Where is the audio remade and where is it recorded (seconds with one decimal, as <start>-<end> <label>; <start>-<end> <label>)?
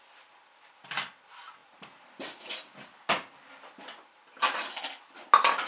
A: 0.0-5.7 recorded